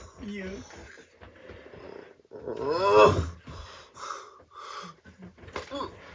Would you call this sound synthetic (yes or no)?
no